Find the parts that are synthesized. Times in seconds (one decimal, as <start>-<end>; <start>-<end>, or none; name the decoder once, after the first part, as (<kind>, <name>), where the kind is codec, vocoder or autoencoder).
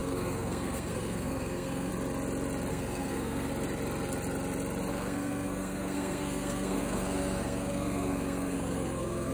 0.0-1.9 (codec, SNAC); 2.7-3.5; 4.9-9.3